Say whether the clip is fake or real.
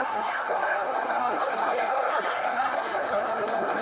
fake